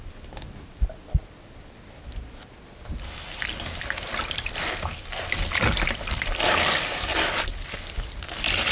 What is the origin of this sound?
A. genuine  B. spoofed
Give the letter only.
A